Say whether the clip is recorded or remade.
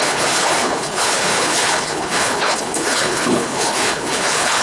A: remade